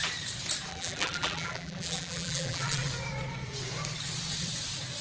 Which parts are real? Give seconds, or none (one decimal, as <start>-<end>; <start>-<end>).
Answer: 0.0-0.7; 2.9-5.0